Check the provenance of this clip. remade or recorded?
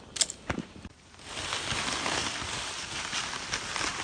recorded